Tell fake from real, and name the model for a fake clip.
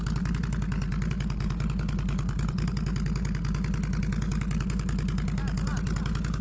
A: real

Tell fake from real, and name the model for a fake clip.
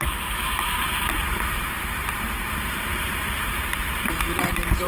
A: fake, vocoder, BigVGAN v2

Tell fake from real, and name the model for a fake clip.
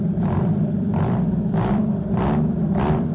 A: fake, vocoder, BigVGAN v2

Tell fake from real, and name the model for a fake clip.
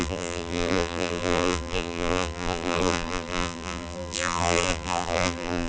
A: fake, vocoder, BigVGAN v2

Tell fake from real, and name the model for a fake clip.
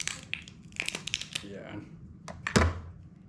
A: real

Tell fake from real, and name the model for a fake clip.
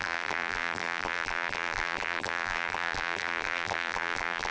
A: fake, vocoder, BigVGAN v2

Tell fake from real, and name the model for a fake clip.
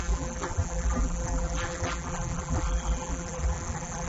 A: fake, vocoder, BigVGAN v2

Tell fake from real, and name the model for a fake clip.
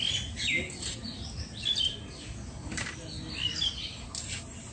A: real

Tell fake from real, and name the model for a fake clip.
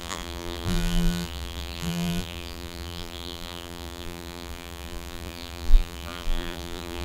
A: fake, vocoder, BigVGAN v2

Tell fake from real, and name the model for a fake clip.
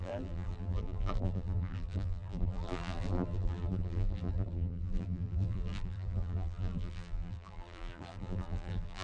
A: fake, vocoder, BigVGAN v2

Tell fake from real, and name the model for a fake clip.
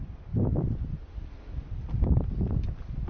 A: fake, vocoder, BigVGAN v2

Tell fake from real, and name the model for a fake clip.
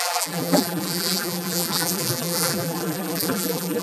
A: fake, vocoder, BigVGAN v2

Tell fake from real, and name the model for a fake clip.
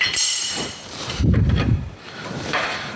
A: fake, vocoder, BigVGAN v2